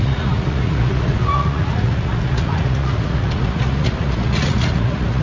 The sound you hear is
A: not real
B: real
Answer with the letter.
A